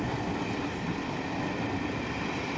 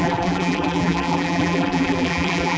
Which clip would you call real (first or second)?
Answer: first